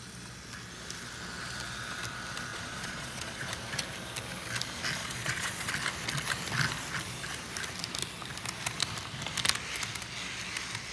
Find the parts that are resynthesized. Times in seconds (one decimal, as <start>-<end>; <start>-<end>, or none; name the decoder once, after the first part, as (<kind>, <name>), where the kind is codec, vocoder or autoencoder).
2.5-3.5 (vocoder, Vocos); 5.0-5.7